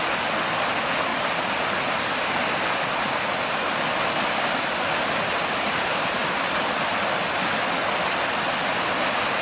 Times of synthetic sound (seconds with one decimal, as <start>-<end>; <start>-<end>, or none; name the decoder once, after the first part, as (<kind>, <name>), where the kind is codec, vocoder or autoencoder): none